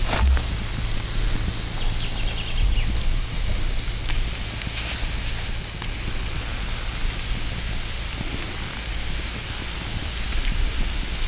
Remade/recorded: recorded